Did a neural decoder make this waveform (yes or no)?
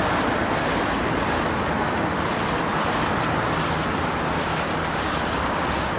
no